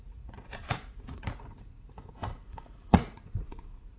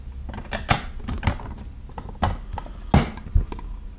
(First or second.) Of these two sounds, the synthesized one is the first